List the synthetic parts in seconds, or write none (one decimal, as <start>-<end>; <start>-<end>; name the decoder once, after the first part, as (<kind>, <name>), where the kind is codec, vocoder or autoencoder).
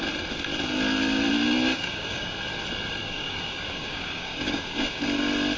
1.7-2.4 (codec, DAC); 3.0-5.0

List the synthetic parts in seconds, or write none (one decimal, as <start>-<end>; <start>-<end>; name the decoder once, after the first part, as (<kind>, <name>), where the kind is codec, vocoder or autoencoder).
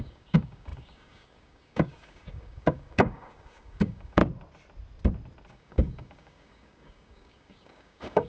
0.0-4.2 (codec, DAC); 5.5-8.3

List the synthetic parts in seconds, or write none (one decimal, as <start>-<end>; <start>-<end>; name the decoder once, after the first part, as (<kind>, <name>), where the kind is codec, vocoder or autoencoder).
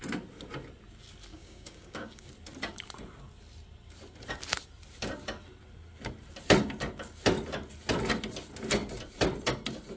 1.3-2.3 (codec, DAC)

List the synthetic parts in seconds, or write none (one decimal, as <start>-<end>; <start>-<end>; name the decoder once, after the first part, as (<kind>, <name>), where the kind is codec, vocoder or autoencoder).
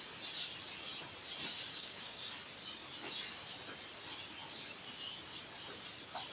1.7-2.3 (codec, DAC)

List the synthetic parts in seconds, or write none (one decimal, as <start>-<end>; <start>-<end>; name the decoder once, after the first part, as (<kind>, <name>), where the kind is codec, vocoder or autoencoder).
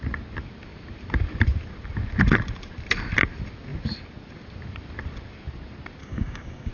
6.0-6.7 (codec, DAC)